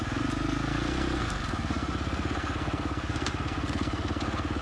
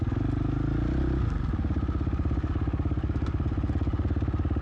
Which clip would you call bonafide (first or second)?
second